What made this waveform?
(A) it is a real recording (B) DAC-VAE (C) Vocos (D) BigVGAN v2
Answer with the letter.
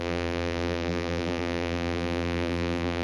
D